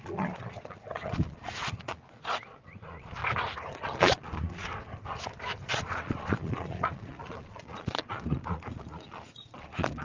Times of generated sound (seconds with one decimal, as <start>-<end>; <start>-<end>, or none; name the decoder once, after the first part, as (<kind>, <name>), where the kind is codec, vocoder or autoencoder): 0.0-3.2 (vocoder, Vocos); 3.7-4.7; 5.7-10.0